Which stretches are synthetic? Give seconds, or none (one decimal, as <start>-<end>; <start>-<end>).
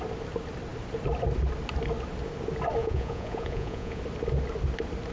2.8-4.0